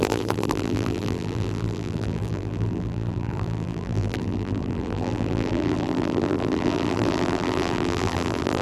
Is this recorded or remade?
remade